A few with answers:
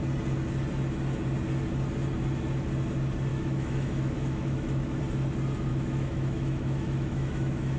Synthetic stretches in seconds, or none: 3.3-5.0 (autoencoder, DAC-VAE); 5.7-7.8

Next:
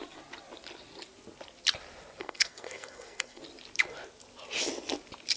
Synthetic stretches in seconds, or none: 2.2-3.4 (codec, SNAC)

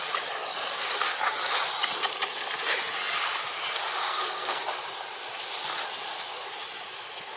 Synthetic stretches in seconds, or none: 4.0-4.6 (codec, SNAC)